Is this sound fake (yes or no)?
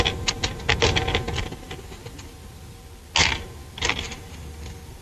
no